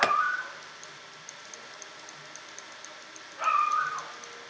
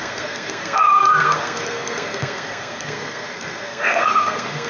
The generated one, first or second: second